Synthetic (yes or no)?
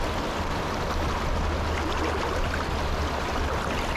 no